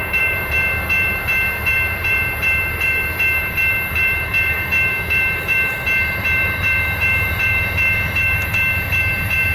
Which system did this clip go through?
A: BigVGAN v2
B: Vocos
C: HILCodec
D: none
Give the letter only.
A